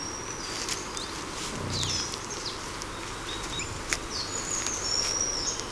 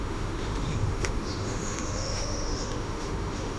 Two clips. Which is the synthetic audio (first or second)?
second